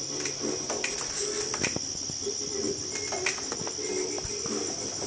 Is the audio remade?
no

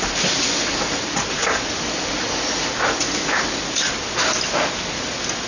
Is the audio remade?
no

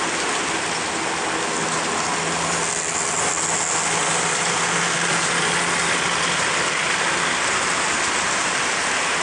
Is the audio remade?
no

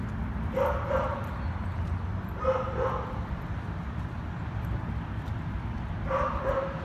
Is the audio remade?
yes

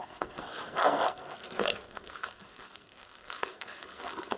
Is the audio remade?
yes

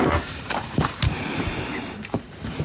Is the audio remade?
yes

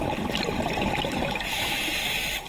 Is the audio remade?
yes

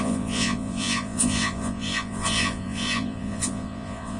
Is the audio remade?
yes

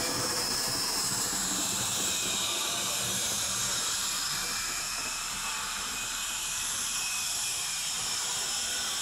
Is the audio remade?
yes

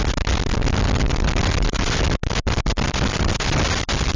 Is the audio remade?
no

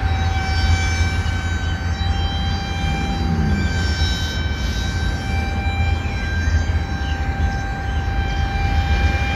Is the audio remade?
no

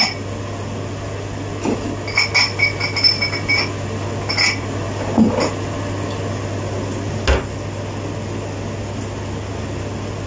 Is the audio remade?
no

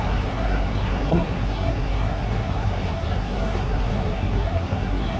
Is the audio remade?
yes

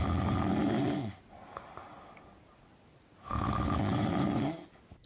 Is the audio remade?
no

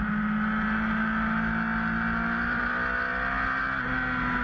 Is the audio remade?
no